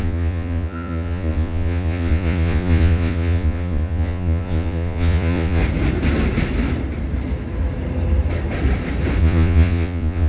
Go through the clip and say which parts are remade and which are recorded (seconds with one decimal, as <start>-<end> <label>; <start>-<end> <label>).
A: 0.0-5.6 remade; 5.6-9.2 recorded; 9.2-10.3 remade

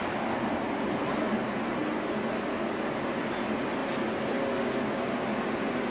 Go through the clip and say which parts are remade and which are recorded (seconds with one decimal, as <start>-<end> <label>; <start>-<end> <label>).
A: 0.0-5.9 recorded

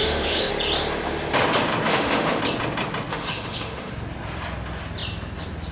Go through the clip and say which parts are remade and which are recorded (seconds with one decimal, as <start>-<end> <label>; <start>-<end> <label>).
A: 0.0-0.5 remade; 0.5-1.9 recorded; 1.9-2.4 remade; 2.4-3.1 recorded; 3.1-3.9 remade; 3.9-5.7 recorded

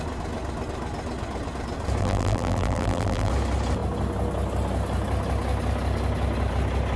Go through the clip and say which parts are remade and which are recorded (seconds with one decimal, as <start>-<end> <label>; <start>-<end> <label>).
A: 0.0-2.0 recorded; 2.0-3.3 remade; 3.3-7.0 recorded

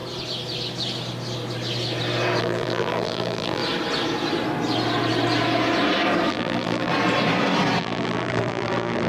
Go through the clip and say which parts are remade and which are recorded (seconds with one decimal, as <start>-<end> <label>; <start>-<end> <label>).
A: 0.0-2.4 recorded; 2.4-3.6 remade; 3.6-6.3 recorded; 6.3-6.9 remade; 6.9-7.8 recorded; 7.8-9.1 remade

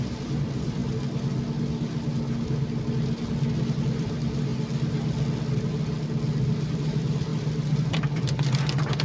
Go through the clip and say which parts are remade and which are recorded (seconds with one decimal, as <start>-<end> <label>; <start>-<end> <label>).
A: 0.0-0.8 remade; 0.8-3.8 recorded; 3.8-4.5 remade; 4.5-6.7 recorded; 6.7-9.0 remade

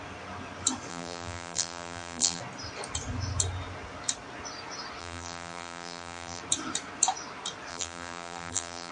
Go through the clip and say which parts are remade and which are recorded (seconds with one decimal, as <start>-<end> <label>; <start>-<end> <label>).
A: 0.0-0.9 recorded; 0.9-2.4 remade; 2.4-5.0 recorded; 5.0-6.4 remade; 6.4-7.7 recorded; 7.7-8.9 remade

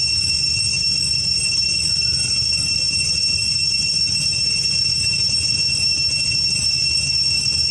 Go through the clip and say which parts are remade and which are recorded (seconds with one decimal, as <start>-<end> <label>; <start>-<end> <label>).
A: 0.0-7.7 recorded